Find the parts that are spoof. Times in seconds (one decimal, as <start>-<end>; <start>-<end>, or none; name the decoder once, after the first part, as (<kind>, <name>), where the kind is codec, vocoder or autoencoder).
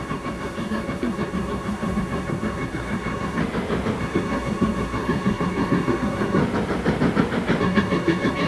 0.0-3.4 (codec, SNAC); 4.0-6.4; 7.6-8.5